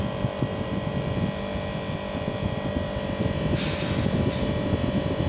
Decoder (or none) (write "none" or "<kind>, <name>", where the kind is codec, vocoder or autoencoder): none